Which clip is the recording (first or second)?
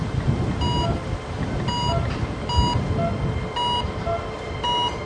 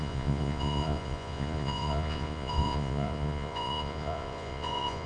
first